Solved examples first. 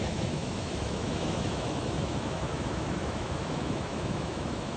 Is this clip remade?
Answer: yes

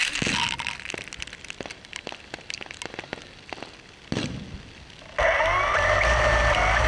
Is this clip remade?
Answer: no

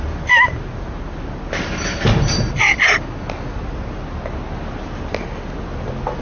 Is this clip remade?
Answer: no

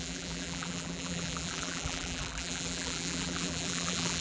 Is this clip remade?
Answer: yes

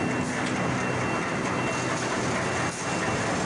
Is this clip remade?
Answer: no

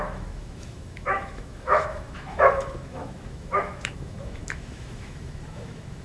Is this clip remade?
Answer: yes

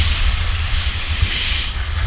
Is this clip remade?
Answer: no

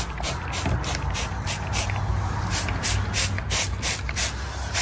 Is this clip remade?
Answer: no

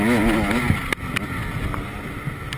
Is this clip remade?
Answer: no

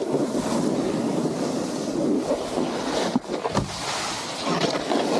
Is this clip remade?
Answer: no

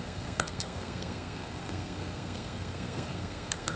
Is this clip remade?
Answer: yes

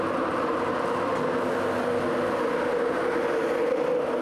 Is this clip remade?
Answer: no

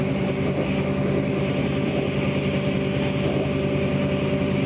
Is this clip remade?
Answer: no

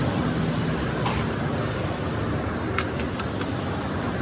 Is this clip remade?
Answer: no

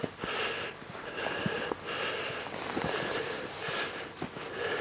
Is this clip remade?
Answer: no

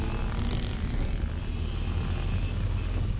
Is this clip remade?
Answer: no